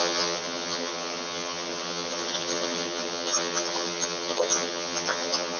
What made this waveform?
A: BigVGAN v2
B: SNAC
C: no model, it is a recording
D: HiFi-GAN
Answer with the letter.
D